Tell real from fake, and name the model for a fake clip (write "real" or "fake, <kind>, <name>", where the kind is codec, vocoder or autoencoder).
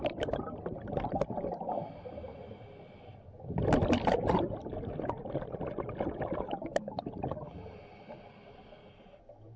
real